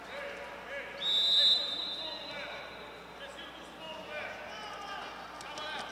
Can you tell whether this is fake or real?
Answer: real